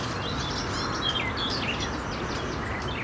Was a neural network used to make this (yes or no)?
no